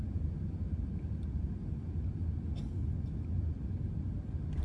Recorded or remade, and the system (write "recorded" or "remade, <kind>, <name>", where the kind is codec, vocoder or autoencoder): recorded